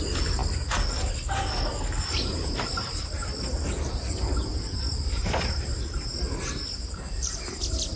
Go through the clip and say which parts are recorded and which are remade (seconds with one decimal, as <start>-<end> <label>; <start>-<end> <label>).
0.0-8.0 recorded